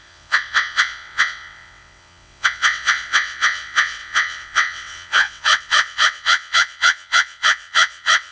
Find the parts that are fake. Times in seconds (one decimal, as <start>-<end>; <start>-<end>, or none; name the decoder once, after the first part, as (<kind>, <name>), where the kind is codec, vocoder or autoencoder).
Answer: 0.0-8.3 (vocoder, WaveNeXt)